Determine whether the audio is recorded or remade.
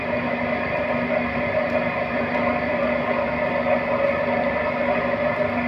recorded